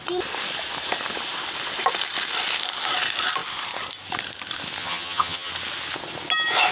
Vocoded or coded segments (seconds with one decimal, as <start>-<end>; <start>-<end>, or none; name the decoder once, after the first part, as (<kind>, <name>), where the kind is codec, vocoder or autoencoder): 4.8-5.5 (vocoder, HiFi-GAN)